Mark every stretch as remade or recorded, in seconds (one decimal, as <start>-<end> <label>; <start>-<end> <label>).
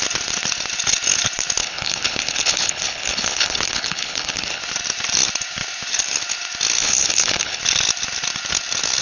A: 0.0-1.6 recorded; 1.6-4.6 remade; 4.6-6.8 recorded; 6.8-7.6 remade; 7.6-9.0 recorded